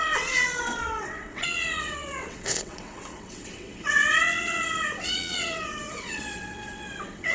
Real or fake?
fake